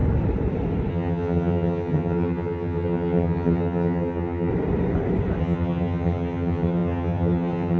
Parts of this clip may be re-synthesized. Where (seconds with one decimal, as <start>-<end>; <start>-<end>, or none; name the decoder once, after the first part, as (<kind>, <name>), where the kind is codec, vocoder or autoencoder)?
0.9-4.5 (vocoder, HiFi-GAN); 5.4-7.8